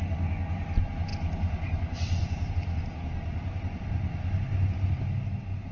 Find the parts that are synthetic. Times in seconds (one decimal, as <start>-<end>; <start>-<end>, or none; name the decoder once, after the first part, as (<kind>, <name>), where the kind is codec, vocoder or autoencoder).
none